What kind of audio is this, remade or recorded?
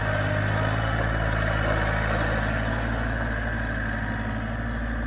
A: recorded